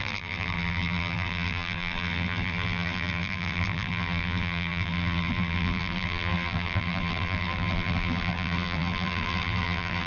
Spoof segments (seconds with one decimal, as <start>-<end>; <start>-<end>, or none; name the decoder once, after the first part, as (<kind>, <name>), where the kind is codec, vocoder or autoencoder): 0.0-10.1 (vocoder, BigVGAN v2)